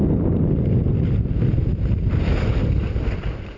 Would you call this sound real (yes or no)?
yes